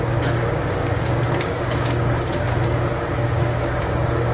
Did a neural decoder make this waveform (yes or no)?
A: yes